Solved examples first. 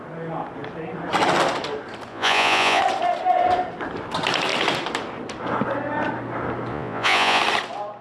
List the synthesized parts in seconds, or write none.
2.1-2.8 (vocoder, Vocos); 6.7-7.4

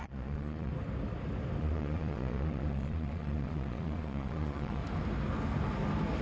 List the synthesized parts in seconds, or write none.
0.0-0.7 (vocoder, Vocos); 1.6-4.8

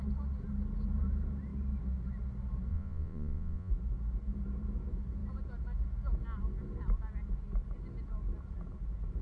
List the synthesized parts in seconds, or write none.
2.7-3.7 (vocoder, Vocos)

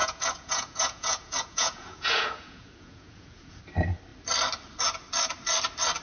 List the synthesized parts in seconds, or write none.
0.0-3.6 (vocoder, Vocos)